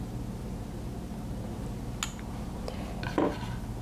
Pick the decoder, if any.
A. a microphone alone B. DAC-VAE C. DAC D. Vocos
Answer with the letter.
A